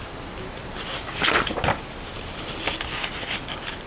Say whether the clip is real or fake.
real